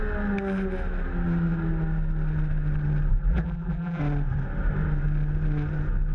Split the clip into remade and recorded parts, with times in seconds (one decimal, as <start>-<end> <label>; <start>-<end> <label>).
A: 0.0-3.1 recorded; 3.1-4.0 remade; 4.0-6.1 recorded